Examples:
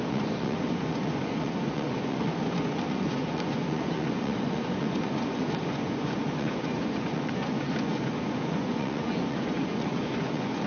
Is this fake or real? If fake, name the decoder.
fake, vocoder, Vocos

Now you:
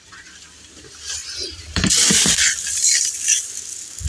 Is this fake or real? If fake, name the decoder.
fake, vocoder, BigVGAN v2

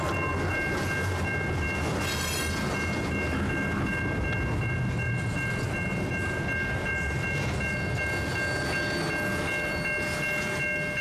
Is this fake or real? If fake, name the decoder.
real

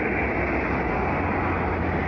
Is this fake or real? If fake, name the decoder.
real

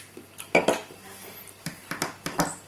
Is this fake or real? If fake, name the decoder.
real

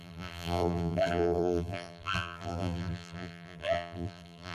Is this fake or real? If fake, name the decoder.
fake, vocoder, BigVGAN v2